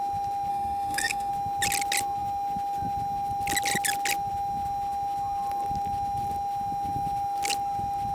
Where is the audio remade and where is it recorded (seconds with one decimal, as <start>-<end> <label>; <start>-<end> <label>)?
0.0-0.5 recorded; 0.5-1.3 remade; 1.3-8.1 recorded